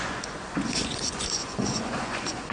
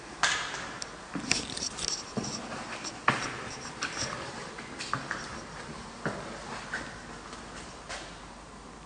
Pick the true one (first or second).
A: second